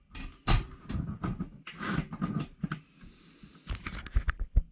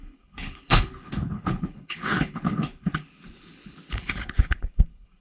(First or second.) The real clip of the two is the first